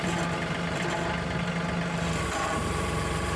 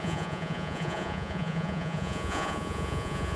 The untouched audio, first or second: first